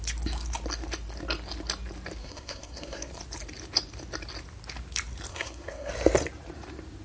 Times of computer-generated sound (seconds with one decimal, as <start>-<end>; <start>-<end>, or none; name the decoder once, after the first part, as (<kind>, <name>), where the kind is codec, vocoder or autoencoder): 2.2-3.1 (codec, SNAC); 5.3-5.9

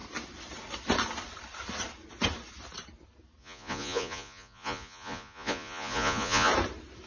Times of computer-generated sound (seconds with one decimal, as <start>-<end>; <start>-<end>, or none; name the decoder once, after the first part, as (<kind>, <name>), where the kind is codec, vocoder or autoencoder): 3.4-6.5 (vocoder, Vocos)